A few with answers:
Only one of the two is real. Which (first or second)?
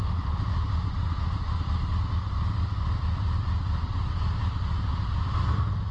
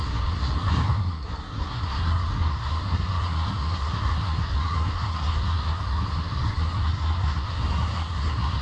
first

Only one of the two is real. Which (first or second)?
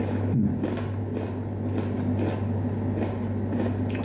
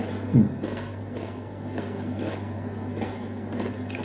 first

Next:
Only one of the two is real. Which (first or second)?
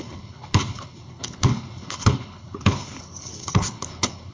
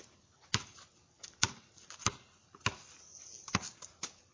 second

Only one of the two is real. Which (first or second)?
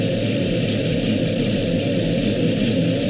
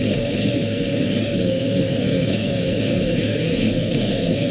first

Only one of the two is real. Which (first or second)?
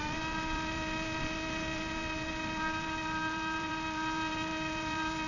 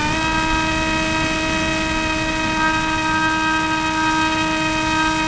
second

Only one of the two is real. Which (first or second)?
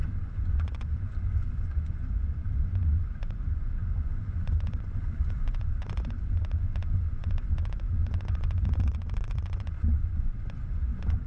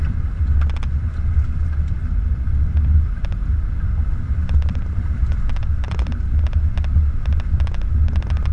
second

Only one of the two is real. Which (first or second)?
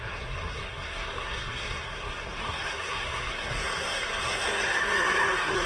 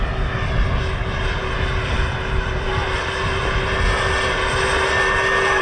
second